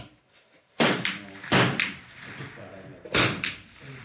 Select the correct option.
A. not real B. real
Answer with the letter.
B